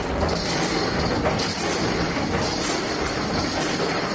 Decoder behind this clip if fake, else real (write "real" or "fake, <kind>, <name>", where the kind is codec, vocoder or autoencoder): real